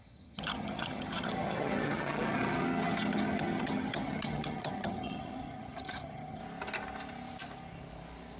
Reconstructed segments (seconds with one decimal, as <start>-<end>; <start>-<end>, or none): 0.0-6.4